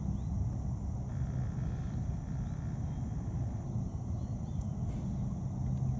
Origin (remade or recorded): recorded